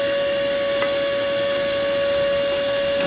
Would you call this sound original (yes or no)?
yes